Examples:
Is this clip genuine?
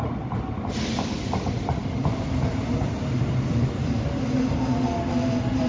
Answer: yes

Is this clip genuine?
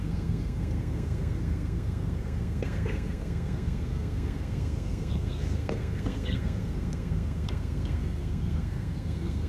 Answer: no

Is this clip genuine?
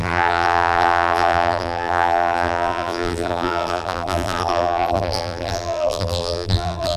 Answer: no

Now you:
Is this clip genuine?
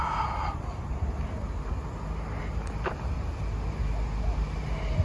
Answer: yes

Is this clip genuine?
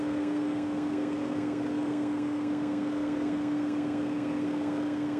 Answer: no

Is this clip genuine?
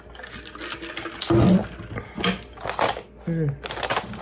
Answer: yes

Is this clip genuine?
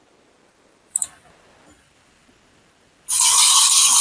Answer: yes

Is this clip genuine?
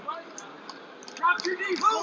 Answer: yes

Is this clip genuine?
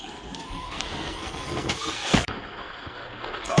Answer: no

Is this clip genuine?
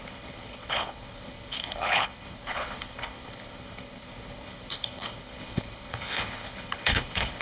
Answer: no